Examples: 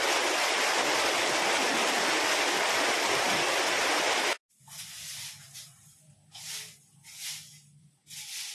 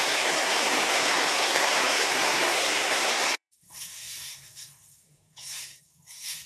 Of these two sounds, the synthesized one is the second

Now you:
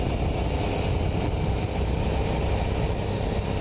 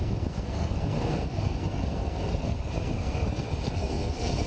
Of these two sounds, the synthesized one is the second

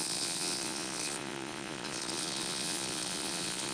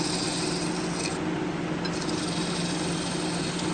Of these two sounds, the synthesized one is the first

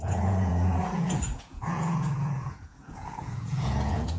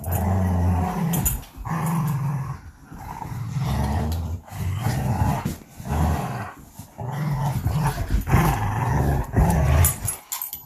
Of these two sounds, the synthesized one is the first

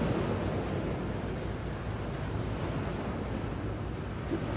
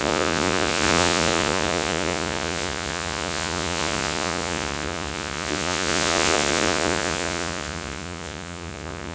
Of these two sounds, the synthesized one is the second